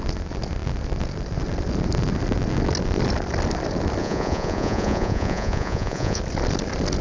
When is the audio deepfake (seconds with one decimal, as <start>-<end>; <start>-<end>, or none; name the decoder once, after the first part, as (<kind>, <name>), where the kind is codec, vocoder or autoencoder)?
4.0-6.2 (vocoder, Vocos)

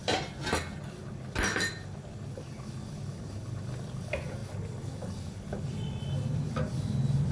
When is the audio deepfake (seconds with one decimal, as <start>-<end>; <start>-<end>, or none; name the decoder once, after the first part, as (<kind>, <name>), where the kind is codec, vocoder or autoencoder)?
none

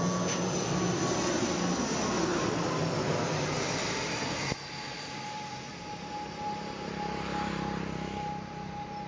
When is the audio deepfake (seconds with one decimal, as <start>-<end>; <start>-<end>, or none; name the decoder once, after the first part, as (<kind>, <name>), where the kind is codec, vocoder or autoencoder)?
2.3-5.8 (vocoder, BigVGAN v2)

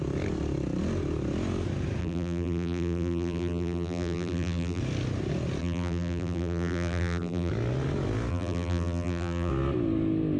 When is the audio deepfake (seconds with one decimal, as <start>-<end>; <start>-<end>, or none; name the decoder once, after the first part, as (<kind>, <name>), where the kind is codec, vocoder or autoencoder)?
2.0-4.8 (vocoder, BigVGAN v2); 5.6-7.5; 8.3-9.5

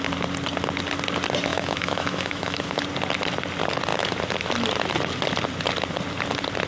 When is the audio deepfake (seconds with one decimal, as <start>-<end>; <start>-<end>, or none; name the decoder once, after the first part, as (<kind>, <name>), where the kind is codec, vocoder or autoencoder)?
1.5-2.8 (autoencoder, DAC-VAE)

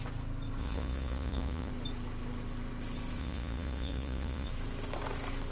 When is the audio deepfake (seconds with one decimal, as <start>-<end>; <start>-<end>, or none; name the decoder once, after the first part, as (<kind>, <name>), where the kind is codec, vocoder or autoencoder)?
0.6-1.7 (vocoder, Vocos); 3.2-4.5

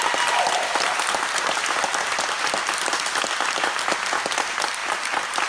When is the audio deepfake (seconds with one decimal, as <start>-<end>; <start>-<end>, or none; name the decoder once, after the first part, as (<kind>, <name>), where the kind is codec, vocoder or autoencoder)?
none

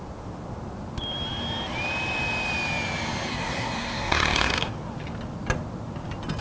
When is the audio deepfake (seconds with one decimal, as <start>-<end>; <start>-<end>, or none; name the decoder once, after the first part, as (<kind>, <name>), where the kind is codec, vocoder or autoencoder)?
3.3-4.7 (codec, SNAC)